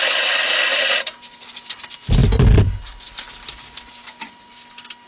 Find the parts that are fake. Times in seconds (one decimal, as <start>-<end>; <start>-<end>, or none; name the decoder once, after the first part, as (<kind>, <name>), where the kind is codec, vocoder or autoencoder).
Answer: none